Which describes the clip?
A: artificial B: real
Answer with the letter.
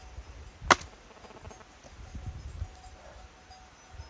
B